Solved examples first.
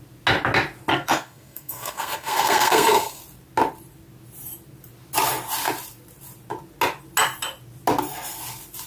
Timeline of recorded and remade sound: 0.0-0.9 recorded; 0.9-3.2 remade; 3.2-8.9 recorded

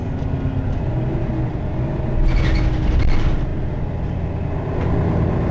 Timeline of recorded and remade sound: 0.0-5.5 recorded

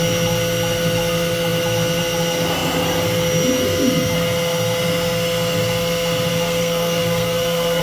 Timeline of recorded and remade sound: 0.0-6.3 recorded; 6.3-7.8 remade

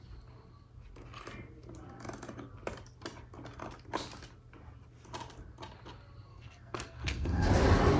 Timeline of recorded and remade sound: 0.0-6.3 recorded; 6.3-7.5 remade; 7.5-8.0 recorded

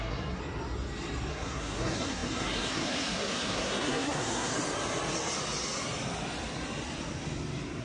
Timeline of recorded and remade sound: 0.0-0.4 remade; 0.4-1.3 recorded; 1.3-4.5 remade; 4.5-7.8 recorded